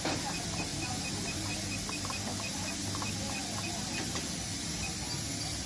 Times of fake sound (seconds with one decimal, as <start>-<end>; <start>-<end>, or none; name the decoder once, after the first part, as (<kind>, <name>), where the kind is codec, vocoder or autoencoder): none